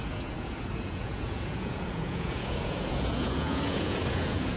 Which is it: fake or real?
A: fake